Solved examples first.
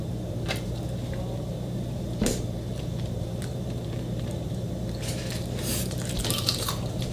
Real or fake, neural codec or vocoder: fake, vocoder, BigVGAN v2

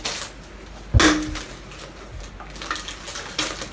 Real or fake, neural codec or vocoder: real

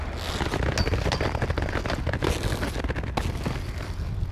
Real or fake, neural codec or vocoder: real